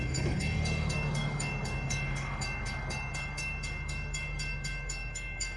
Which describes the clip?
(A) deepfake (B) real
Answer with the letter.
A